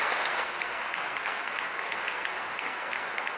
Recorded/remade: remade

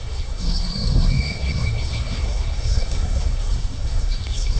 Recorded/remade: remade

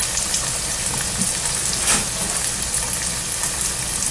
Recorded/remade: recorded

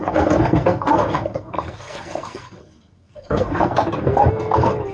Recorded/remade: remade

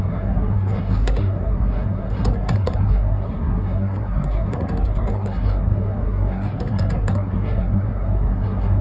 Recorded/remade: remade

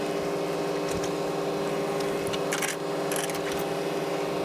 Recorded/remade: recorded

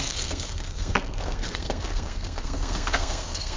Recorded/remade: remade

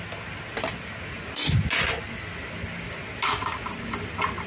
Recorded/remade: recorded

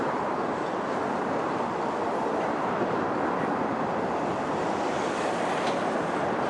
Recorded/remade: recorded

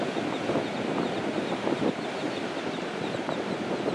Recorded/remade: recorded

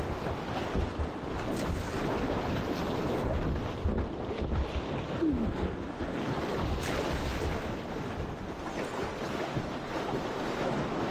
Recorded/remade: recorded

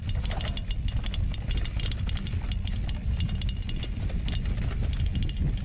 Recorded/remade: recorded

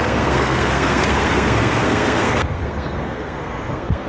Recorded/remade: remade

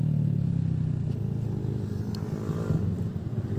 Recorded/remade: recorded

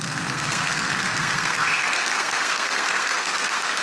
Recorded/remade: remade